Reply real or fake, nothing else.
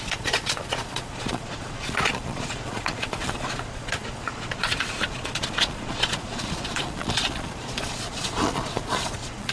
fake